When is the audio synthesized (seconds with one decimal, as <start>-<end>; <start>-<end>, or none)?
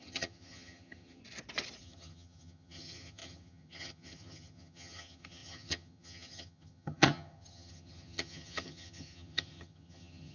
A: 0.0-1.2; 1.8-10.3